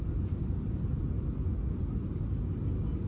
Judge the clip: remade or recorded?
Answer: recorded